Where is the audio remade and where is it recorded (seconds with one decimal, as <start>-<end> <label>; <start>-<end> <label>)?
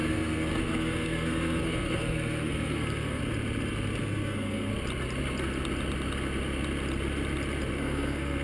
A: 0.0-3.2 remade; 3.2-4.0 recorded; 4.0-4.7 remade; 4.7-7.7 recorded; 7.7-8.4 remade